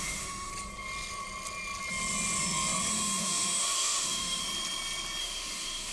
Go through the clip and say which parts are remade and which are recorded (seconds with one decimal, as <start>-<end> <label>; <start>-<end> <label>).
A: 0.0-0.5 remade; 0.5-2.9 recorded; 2.9-4.4 remade; 4.4-5.2 recorded; 5.2-5.9 remade